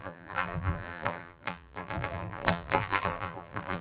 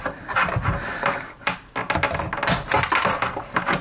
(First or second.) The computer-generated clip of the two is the first